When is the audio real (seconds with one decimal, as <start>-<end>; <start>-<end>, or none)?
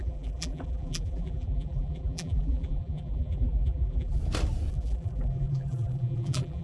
4.2-4.7